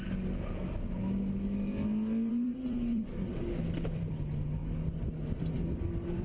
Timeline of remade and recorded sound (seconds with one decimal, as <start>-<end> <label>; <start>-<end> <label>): 0.0-1.0 remade; 1.0-2.3 recorded; 2.3-4.6 remade; 4.6-5.4 recorded; 5.4-6.2 remade